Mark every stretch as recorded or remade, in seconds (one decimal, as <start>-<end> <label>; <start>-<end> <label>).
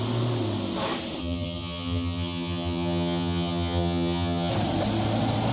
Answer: 0.0-1.2 recorded; 1.2-4.5 remade; 4.5-5.5 recorded